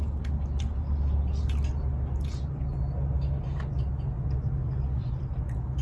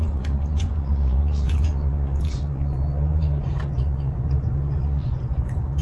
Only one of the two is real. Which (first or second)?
first